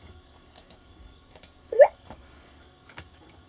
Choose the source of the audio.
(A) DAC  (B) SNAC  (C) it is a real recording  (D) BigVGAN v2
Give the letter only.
A